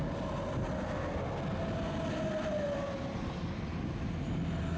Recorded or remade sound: recorded